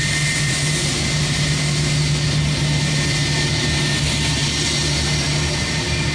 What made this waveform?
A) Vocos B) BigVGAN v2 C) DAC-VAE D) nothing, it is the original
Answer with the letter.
D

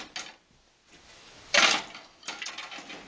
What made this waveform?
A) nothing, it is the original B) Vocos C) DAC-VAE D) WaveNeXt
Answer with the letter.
A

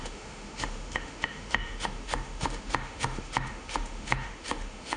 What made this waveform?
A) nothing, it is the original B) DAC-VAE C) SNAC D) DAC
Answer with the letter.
B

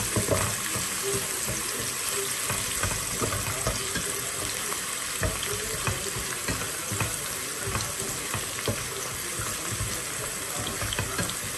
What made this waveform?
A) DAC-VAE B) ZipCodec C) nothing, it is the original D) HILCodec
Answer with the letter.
C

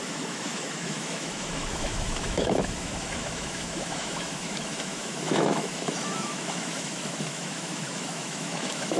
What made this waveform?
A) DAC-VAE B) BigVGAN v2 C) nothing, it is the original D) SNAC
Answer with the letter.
A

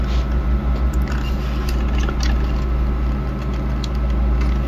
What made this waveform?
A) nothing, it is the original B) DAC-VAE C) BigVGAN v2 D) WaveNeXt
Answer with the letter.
A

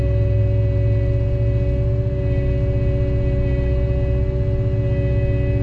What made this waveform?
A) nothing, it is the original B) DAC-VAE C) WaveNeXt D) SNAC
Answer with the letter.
A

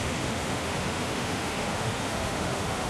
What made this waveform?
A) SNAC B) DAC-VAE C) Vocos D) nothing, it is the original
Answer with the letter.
B